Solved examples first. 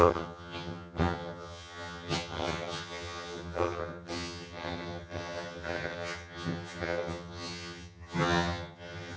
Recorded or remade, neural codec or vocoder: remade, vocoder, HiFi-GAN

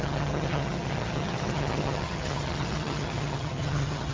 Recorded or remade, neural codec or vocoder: remade, vocoder, HiFi-GAN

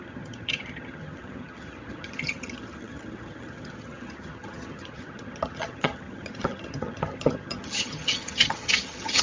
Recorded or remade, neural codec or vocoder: remade, vocoder, HiFi-GAN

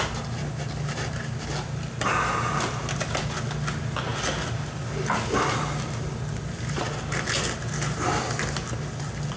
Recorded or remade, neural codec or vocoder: recorded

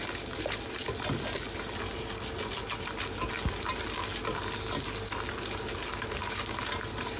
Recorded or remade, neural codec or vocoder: recorded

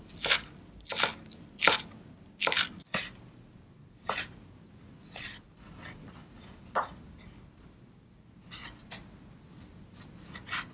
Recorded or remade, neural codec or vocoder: recorded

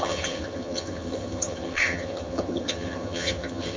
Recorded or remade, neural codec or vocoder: remade, vocoder, HiFi-GAN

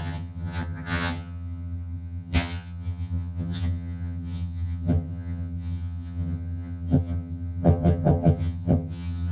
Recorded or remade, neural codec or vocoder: remade, vocoder, HiFi-GAN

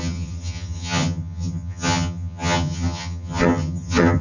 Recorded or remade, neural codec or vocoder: remade, vocoder, HiFi-GAN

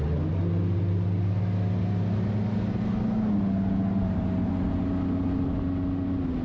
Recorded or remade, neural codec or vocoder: recorded